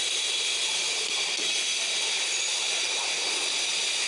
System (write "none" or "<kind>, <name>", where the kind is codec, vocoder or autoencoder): none